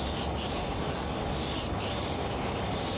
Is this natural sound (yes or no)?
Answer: yes